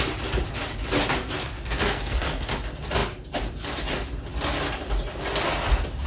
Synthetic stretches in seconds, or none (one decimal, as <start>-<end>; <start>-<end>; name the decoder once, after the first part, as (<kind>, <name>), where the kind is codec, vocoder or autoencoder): 1.2-2.5 (codec, SNAC)

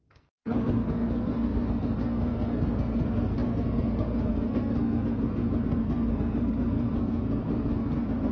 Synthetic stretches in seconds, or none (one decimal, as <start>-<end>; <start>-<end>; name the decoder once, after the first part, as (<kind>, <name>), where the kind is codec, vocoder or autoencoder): 0.0-8.3 (codec, SNAC)